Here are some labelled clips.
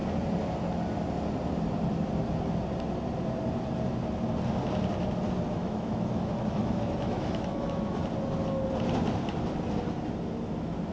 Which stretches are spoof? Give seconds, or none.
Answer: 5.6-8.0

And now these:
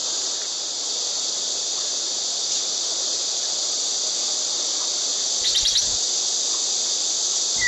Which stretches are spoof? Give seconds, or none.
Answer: none

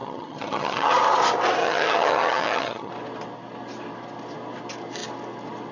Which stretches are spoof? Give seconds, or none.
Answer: 0.0-0.9; 1.6-2.9

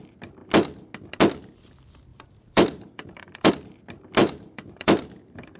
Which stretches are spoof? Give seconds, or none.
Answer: 2.1-3.5; 4.2-5.6